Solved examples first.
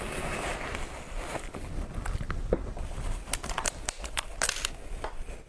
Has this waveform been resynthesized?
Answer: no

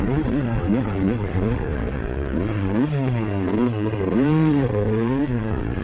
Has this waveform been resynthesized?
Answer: yes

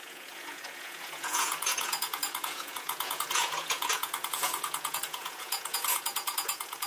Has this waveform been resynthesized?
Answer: yes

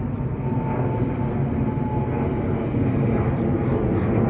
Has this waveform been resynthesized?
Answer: no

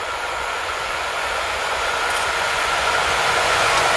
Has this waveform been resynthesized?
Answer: yes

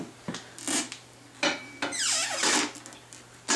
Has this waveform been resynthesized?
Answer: no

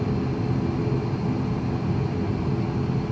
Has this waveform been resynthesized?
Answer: no